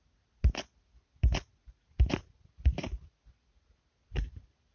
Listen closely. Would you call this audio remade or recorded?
recorded